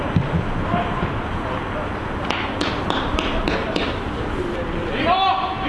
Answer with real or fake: real